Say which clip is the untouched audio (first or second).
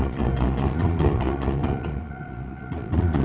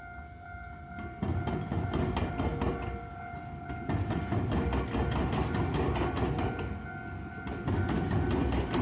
second